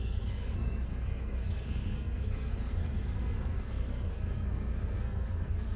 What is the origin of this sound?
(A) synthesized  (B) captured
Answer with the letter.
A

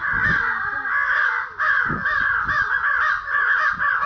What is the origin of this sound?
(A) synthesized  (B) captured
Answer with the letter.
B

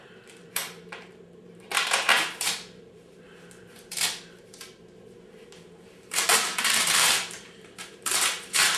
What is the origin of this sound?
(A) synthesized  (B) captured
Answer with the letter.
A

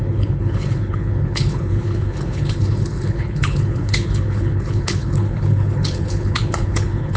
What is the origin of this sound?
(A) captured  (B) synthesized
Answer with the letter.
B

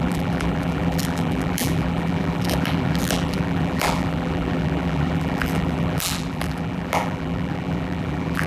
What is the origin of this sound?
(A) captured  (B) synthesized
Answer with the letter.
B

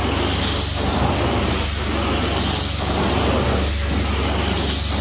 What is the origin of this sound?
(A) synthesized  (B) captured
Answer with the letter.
B